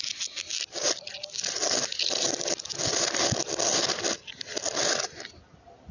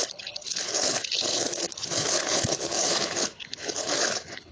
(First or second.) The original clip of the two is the first